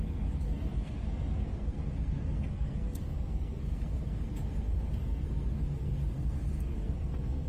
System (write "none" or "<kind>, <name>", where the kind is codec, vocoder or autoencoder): codec, SNAC